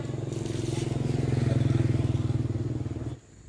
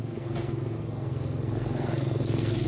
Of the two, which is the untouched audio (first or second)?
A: first